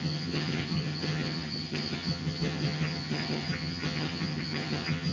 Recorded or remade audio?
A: remade